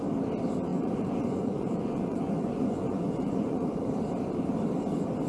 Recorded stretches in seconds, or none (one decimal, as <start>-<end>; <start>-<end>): 0.0-0.7; 3.9-5.3